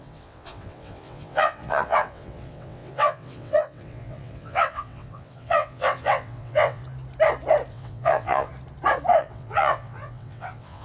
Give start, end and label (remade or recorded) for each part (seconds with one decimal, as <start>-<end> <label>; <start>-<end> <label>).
0.0-6.8 remade; 6.8-7.7 recorded; 7.7-8.5 remade; 8.5-9.2 recorded; 9.2-10.8 remade